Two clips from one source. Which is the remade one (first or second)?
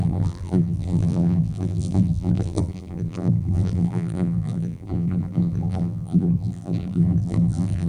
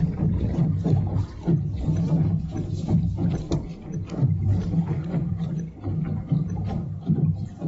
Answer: first